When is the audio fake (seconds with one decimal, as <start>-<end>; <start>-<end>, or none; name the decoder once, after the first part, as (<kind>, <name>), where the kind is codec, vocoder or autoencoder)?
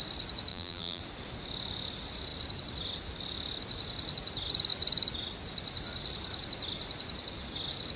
0.5-1.0 (vocoder, BigVGAN v2)